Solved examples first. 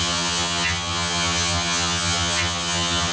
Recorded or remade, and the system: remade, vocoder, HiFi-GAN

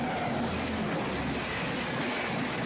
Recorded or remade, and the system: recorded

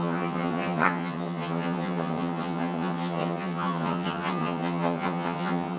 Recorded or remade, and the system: remade, vocoder, HiFi-GAN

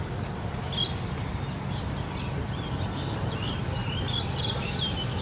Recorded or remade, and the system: recorded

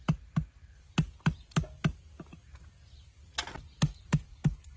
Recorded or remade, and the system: recorded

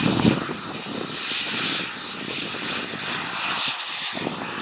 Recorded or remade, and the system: recorded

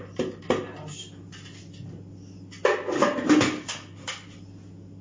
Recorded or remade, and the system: recorded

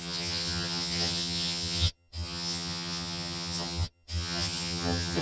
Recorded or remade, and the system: remade, vocoder, HiFi-GAN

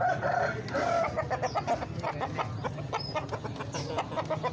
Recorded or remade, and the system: recorded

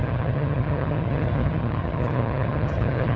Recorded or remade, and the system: remade, vocoder, HiFi-GAN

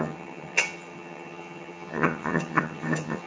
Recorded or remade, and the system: remade, vocoder, HiFi-GAN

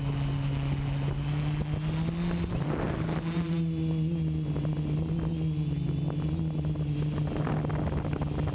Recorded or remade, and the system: recorded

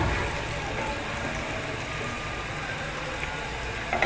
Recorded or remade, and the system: recorded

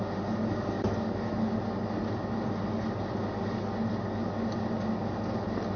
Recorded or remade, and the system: recorded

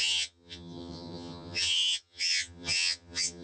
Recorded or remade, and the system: remade, vocoder, HiFi-GAN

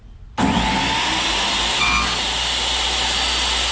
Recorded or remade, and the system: recorded